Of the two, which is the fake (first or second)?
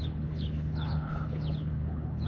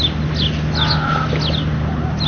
first